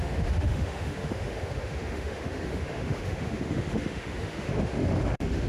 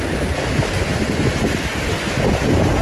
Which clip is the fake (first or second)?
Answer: first